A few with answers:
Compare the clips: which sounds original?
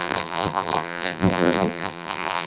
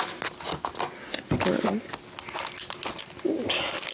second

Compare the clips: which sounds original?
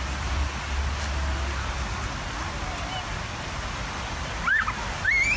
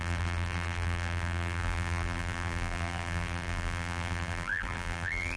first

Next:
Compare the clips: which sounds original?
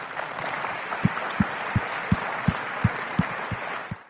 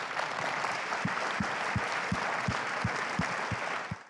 second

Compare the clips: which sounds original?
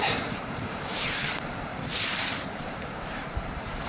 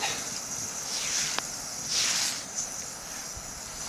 second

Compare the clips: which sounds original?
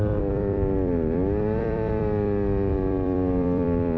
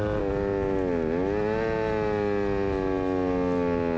second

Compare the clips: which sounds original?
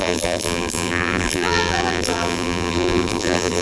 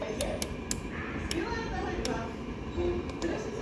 second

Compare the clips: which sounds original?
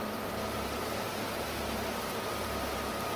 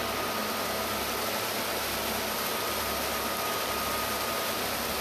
second